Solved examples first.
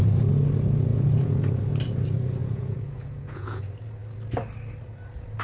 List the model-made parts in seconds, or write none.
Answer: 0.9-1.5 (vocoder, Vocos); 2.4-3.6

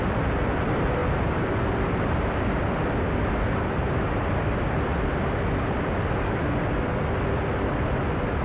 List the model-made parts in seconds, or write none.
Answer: none

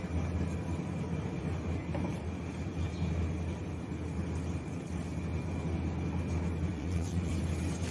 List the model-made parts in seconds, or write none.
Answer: 6.7-7.3 (vocoder, Vocos)

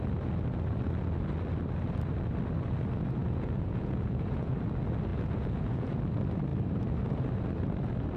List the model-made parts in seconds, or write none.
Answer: 3.2-4.5 (vocoder, Vocos); 5.1-5.9

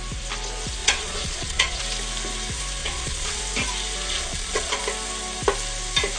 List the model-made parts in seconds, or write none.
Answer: 0.8-1.8 (vocoder, Vocos); 2.8-3.4; 4.1-4.8

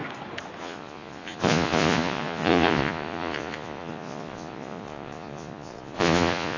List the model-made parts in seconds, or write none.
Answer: 0.6-6.6 (vocoder, Vocos)

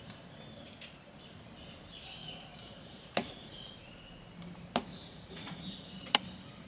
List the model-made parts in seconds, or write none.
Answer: 2.2-3.7 (vocoder, Vocos); 4.9-6.0

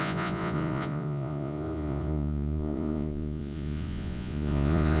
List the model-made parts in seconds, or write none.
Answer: 0.0-5.0 (vocoder, Vocos)